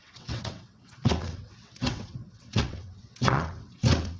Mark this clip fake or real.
fake